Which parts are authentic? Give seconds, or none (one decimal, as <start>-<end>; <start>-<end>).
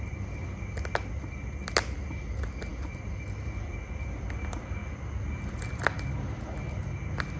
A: 0.0-7.4